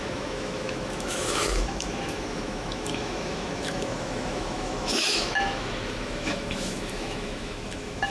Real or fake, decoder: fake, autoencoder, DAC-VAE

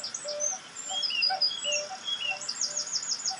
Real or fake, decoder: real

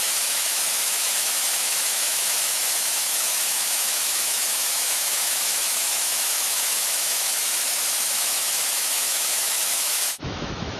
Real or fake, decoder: fake, autoencoder, DAC-VAE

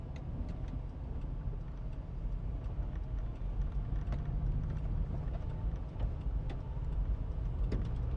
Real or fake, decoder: real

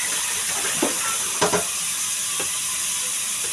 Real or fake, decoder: real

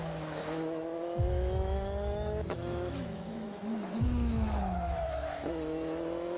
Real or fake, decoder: fake, autoencoder, DAC-VAE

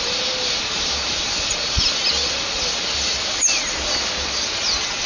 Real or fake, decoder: real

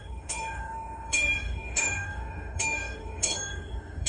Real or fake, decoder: fake, autoencoder, DAC-VAE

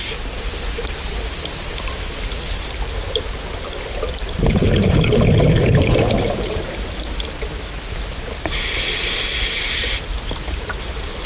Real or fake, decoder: real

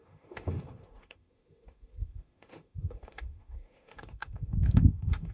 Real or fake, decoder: fake, autoencoder, DAC-VAE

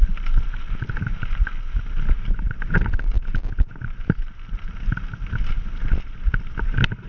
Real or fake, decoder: real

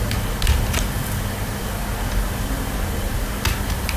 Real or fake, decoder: real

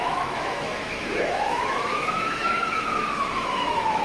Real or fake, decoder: fake, autoencoder, DAC-VAE